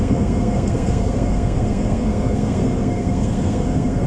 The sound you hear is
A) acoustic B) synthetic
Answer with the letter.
B